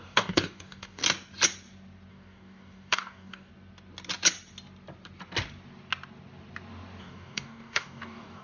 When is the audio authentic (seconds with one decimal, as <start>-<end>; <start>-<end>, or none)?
1.0-2.1; 3.5-7.0

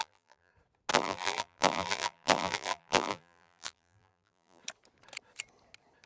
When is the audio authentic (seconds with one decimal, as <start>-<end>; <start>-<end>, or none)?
0.5-0.9; 4.6-6.1

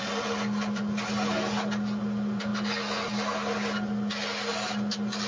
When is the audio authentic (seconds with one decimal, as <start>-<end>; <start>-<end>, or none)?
0.0-5.3

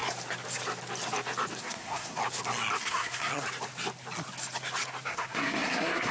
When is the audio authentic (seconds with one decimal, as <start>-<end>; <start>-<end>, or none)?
0.0-1.6; 2.2-2.8; 3.3-5.1

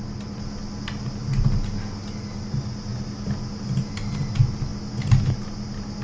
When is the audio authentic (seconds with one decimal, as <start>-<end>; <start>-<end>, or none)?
0.0-6.0